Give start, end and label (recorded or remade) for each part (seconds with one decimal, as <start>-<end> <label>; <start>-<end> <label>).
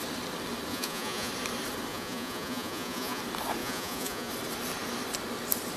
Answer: 0.0-0.7 recorded; 0.7-1.3 remade; 1.3-1.9 recorded; 1.9-3.2 remade; 3.2-3.6 recorded; 3.6-4.3 remade; 4.3-5.8 recorded